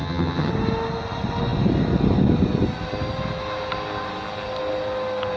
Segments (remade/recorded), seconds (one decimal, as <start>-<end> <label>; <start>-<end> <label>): 0.0-0.5 remade; 0.5-5.4 recorded